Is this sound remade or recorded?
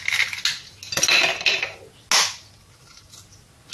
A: recorded